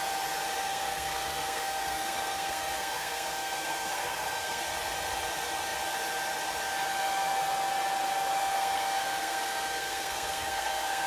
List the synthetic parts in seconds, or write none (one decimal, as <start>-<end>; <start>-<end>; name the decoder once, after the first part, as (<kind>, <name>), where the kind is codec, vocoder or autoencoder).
0.6-4.6 (codec, SNAC); 8.4-11.1